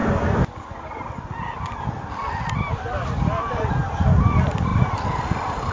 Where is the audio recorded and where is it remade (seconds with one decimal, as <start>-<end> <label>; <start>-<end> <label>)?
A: 0.0-5.7 recorded